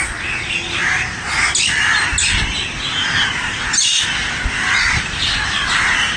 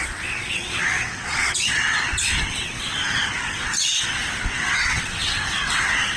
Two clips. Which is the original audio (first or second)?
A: first